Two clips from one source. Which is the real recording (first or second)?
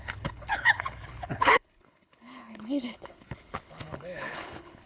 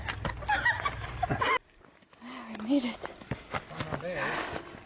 second